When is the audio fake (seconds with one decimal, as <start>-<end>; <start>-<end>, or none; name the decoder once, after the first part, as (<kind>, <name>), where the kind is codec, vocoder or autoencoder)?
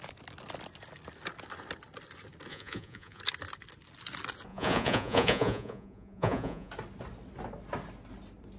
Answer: 2.5-3.2 (vocoder, Vocos); 4.5-6.7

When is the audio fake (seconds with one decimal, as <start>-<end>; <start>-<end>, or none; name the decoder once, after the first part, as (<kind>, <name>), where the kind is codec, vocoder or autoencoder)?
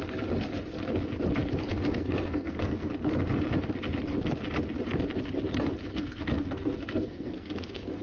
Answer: 1.7-2.9 (codec, SNAC); 5.9-8.0